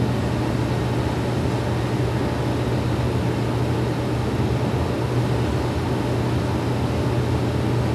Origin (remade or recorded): recorded